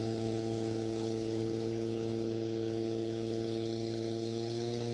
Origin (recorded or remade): remade